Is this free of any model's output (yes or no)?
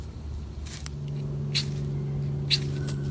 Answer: yes